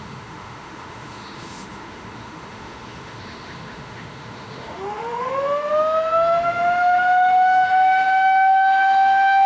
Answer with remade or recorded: remade